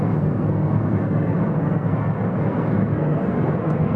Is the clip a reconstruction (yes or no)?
yes